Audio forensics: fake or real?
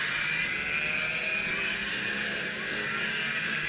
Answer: real